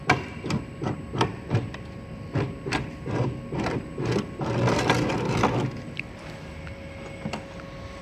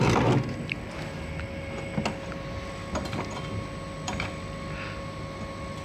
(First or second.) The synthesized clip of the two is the first